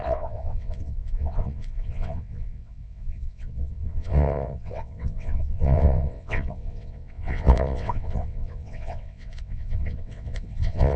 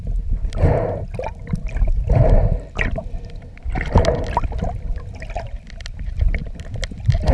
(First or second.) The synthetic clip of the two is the first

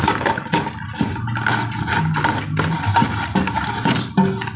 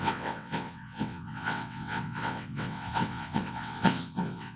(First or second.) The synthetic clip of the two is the second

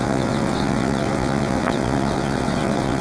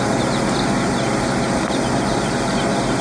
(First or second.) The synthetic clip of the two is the first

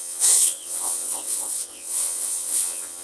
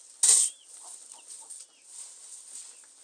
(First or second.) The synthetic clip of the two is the first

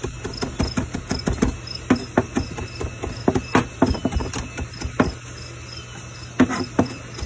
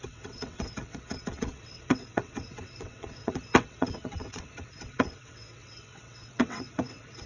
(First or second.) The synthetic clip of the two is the second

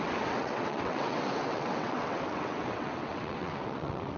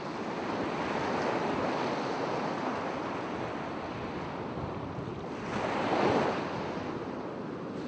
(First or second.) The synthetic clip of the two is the first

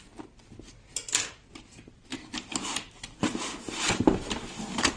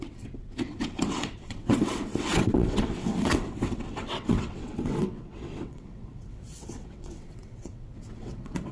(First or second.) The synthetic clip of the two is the second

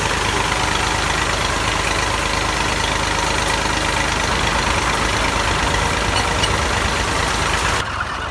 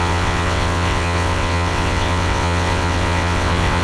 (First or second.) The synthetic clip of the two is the second